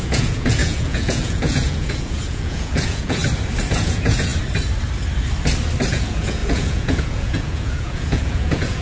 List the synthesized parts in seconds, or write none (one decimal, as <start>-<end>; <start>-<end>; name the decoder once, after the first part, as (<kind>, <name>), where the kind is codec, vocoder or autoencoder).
0.0-3.2 (vocoder, Vocos); 3.7-4.3; 5.9-8.8